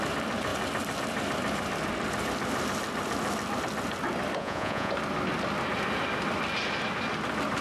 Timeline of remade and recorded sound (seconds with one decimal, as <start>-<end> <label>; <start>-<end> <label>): 0.0-4.4 recorded; 4.4-4.9 remade; 4.9-7.6 recorded